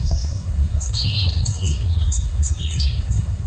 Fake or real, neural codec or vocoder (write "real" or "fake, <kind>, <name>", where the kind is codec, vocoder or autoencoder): fake, codec, SNAC